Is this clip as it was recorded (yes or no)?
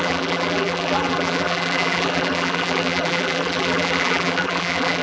no